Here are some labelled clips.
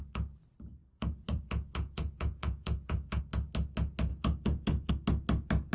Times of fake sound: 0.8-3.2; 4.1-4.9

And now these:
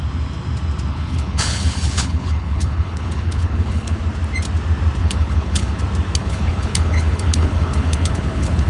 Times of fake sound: 0.9-4.0; 5.0-5.8; 6.2-8.7

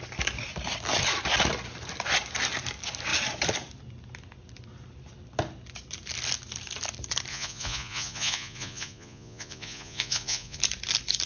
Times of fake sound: 7.3-10.6

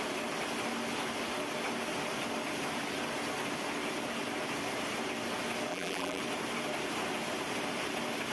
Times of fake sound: 5.7-6.2

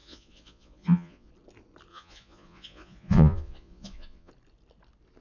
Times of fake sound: 0.0-1.3; 1.9-4.3

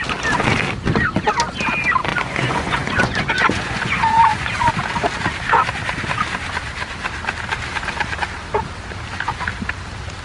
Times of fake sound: 2.1-4.7